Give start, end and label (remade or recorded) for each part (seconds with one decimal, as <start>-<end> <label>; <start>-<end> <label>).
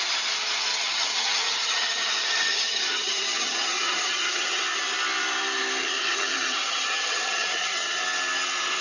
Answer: 0.0-0.7 recorded; 0.7-4.6 remade; 4.6-5.8 recorded; 5.8-8.0 remade; 8.0-8.8 recorded